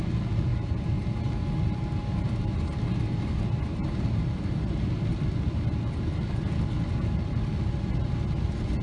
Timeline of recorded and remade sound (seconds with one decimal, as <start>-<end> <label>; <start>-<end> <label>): 0.0-8.8 recorded